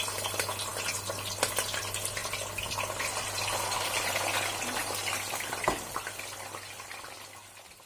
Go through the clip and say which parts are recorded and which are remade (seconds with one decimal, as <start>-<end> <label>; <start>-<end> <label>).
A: 0.0-7.9 recorded

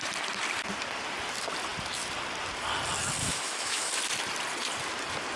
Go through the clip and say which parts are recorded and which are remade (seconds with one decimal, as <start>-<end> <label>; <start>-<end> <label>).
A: 0.0-3.2 recorded; 3.2-3.9 remade; 3.9-5.4 recorded

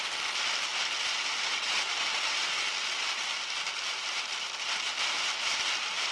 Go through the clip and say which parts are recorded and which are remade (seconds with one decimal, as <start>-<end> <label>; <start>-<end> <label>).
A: 0.0-6.1 recorded

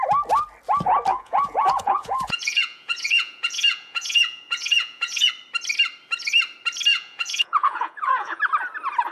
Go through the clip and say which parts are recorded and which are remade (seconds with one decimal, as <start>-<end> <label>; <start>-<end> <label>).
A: 0.0-1.1 recorded; 1.1-5.3 remade; 5.3-6.9 recorded; 6.9-8.4 remade; 8.4-9.1 recorded

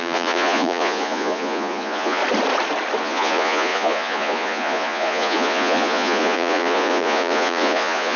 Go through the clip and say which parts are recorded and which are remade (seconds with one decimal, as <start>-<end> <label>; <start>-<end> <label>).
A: 0.0-2.2 remade; 2.2-3.0 recorded; 3.0-8.2 remade

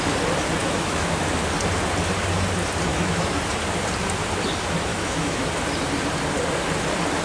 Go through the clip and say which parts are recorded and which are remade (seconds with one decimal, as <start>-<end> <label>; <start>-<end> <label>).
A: 0.0-0.6 recorded; 0.6-1.2 remade; 1.2-2.9 recorded; 2.9-3.4 remade; 3.4-4.9 recorded; 4.9-5.5 remade; 5.5-7.2 recorded